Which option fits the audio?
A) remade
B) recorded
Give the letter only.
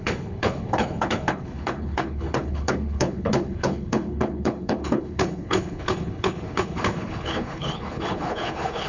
A